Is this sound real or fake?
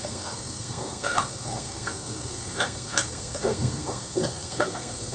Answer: fake